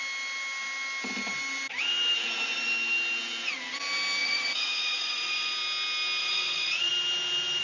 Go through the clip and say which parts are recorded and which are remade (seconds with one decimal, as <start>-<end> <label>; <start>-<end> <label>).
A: 0.0-4.2 recorded; 4.2-5.3 remade; 5.3-6.2 recorded; 6.2-6.9 remade; 6.9-7.6 recorded